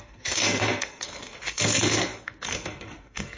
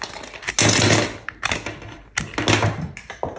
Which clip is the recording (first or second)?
second